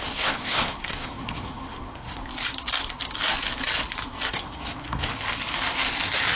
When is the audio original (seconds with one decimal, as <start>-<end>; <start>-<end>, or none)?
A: 2.2-4.3; 5.1-6.4